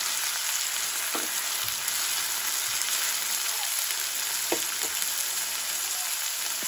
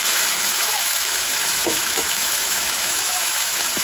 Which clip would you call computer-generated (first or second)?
second